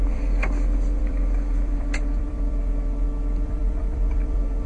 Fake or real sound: fake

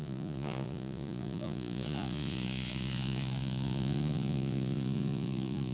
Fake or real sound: fake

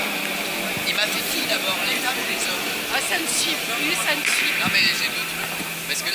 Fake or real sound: fake